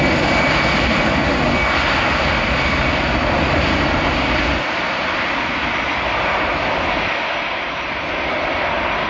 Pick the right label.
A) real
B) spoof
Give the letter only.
A